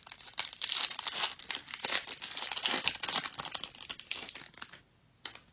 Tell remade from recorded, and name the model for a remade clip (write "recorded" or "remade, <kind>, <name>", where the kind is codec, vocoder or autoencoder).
recorded